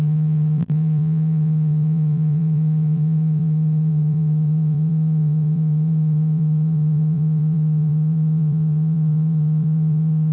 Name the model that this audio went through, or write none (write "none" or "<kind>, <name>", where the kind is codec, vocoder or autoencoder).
vocoder, BigVGAN v2